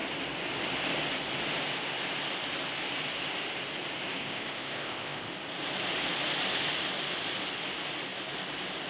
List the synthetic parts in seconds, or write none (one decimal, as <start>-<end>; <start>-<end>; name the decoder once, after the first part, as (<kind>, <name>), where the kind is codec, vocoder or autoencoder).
4.2-5.3 (codec, ZipCodec)